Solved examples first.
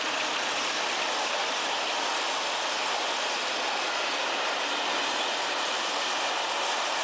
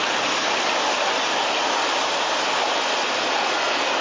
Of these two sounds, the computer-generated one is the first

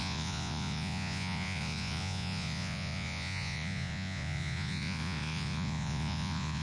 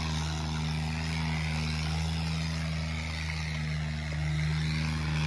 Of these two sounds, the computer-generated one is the first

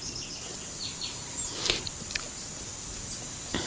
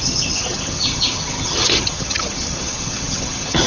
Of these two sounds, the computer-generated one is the second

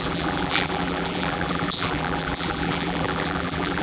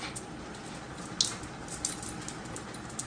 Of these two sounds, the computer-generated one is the first